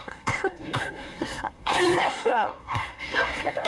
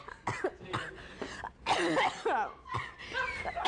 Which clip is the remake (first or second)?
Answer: first